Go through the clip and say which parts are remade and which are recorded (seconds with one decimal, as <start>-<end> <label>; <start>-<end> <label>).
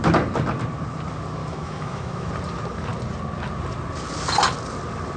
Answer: 0.0-1.4 recorded; 1.4-2.3 remade; 2.3-5.2 recorded